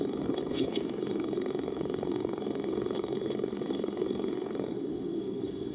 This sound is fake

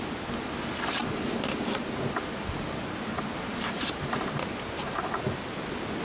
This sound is real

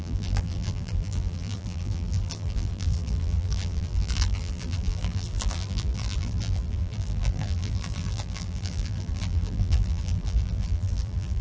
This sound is fake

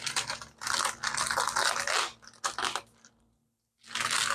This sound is real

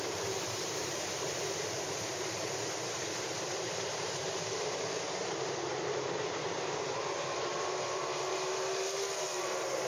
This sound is fake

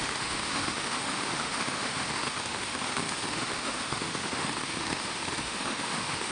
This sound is fake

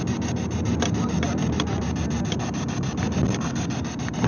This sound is real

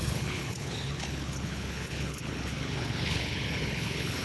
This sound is fake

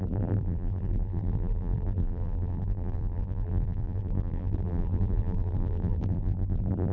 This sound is fake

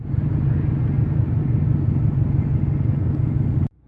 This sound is real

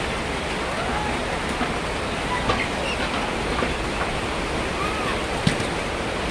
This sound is real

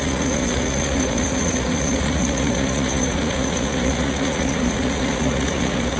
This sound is fake